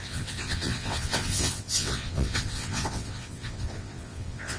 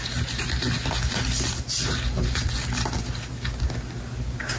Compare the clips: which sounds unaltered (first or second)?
second